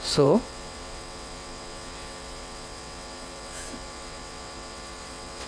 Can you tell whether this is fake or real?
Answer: fake